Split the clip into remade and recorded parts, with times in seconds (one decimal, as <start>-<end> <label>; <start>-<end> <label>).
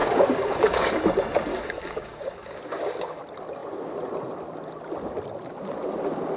0.0-0.9 remade; 0.9-1.5 recorded; 1.5-3.2 remade; 3.2-6.4 recorded